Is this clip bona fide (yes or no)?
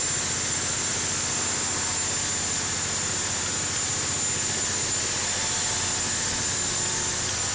yes